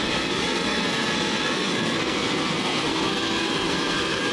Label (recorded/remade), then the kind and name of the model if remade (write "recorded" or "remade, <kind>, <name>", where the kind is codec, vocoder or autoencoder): remade, codec, SNAC